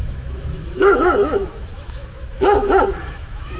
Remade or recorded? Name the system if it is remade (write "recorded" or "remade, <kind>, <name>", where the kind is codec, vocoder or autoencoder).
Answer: remade, autoencoder, DAC-VAE